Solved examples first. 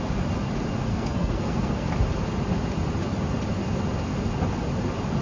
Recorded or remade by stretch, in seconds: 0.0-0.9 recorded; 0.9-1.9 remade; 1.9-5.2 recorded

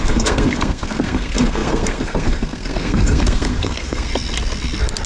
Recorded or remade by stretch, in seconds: 0.0-4.1 remade; 4.1-5.1 recorded